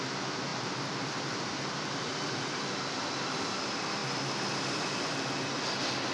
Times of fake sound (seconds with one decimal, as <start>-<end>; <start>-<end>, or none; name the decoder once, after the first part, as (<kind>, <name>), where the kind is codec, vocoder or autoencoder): 0.0-4.0 (vocoder, BigVGAN v2)